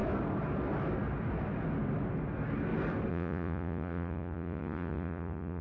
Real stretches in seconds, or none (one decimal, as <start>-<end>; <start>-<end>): 0.0-3.1